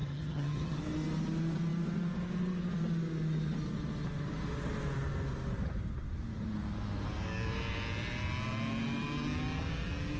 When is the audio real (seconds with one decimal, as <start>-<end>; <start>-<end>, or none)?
0.8-10.2